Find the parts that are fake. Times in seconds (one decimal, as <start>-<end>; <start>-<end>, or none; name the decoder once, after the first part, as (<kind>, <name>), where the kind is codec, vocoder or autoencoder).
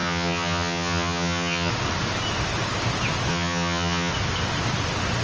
0.0-1.7 (vocoder, HiFi-GAN); 3.3-4.1